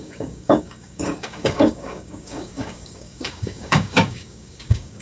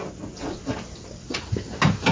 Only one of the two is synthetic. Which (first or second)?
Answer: first